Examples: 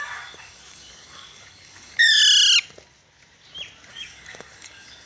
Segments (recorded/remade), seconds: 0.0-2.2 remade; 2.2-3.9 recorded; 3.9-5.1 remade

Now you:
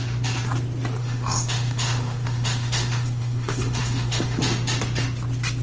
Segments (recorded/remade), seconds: 0.0-1.0 recorded; 1.0-4.4 remade; 4.4-5.6 recorded

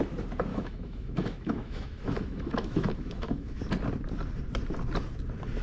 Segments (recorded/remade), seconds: 0.0-0.5 recorded; 0.5-3.6 remade; 3.6-5.6 recorded

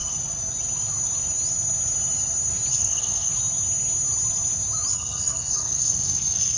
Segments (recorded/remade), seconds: 0.0-2.7 recorded; 2.7-3.3 remade; 3.3-4.9 recorded; 4.9-6.6 remade

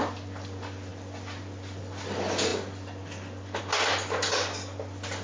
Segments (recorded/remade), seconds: 0.0-5.2 recorded